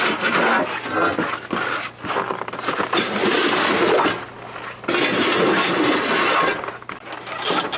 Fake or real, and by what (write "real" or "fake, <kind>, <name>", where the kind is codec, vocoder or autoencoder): real